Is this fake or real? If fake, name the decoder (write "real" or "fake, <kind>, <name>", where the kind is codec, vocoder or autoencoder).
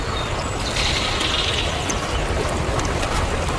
real